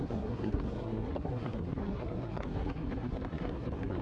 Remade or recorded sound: remade